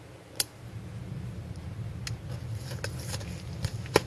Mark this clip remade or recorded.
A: recorded